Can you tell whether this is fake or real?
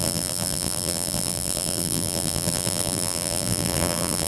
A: fake